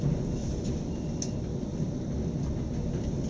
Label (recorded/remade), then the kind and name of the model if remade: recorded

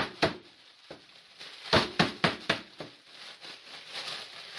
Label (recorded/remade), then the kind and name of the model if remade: recorded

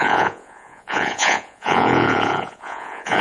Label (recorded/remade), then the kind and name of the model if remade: remade, vocoder, Vocos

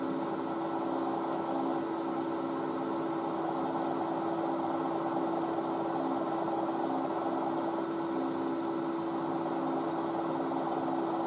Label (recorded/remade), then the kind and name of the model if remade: recorded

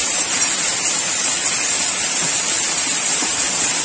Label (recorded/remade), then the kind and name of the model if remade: recorded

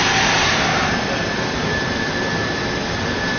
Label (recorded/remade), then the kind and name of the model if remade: recorded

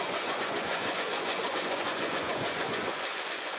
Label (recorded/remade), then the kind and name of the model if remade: remade, vocoder, Vocos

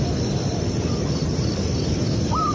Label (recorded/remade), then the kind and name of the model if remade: recorded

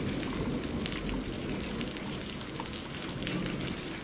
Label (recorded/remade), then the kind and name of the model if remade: recorded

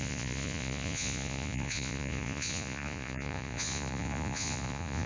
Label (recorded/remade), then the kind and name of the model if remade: remade, vocoder, Vocos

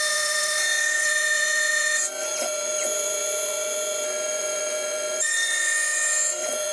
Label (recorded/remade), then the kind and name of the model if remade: remade, vocoder, Vocos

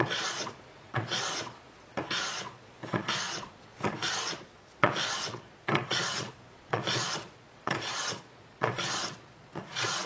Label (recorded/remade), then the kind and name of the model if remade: remade, vocoder, Vocos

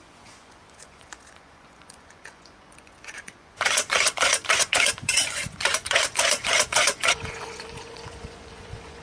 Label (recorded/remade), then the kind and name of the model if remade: remade, vocoder, Vocos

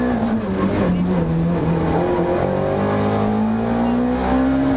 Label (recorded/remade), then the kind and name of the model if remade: recorded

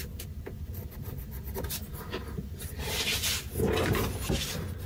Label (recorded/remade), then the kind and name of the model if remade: recorded